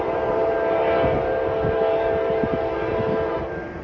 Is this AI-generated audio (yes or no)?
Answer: yes